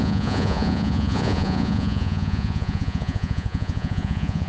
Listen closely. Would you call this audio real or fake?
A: fake